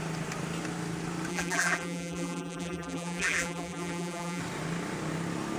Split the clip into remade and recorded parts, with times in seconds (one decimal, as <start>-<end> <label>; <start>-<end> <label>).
0.0-1.3 recorded; 1.3-4.4 remade; 4.4-5.6 recorded